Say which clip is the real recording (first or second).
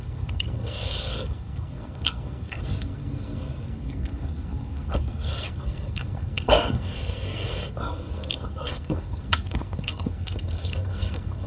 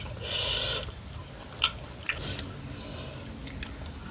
second